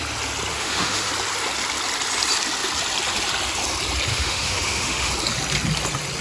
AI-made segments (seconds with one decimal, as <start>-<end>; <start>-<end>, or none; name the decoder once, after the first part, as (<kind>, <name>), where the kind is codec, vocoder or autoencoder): 0.5-1.1 (autoencoder, DAC-VAE); 4.1-5.1

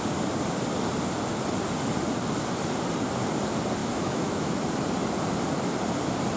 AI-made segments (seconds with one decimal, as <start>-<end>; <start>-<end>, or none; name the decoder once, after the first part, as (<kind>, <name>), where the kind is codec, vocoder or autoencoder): 3.8-4.6 (autoencoder, DAC-VAE)

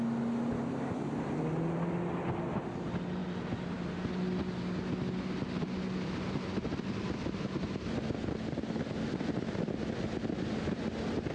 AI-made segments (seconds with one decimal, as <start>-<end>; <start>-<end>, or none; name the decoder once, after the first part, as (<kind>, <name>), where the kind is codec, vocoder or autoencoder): none